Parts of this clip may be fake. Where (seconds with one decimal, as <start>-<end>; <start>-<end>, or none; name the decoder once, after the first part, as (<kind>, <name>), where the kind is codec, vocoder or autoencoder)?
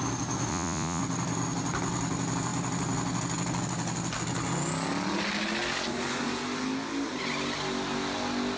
0.5-1.0 (vocoder, Vocos)